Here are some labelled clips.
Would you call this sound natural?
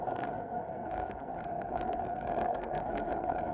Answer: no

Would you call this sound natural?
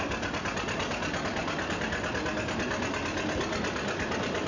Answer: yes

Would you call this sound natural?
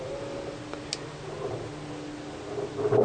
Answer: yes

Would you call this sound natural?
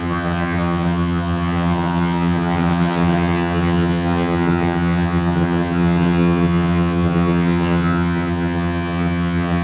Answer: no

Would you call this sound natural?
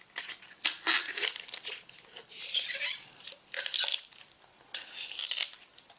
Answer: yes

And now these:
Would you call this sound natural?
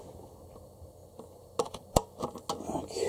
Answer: yes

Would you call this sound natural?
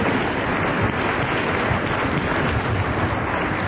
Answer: yes